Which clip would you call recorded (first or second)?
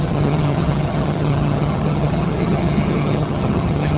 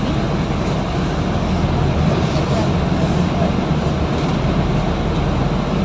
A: second